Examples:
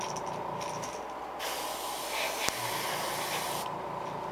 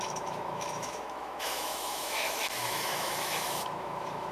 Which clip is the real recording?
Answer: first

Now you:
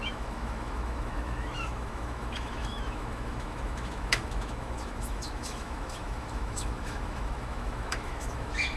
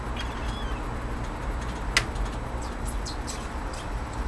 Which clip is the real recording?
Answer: second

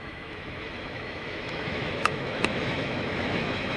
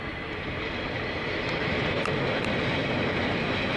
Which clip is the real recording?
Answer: second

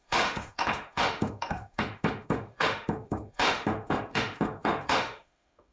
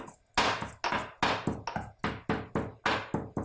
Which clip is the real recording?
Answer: second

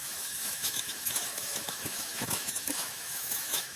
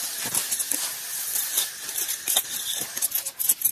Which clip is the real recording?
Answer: second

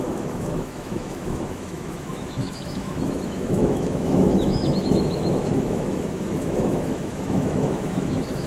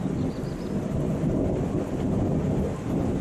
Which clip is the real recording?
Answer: second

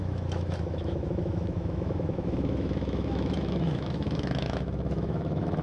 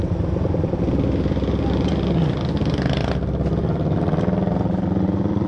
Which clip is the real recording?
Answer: second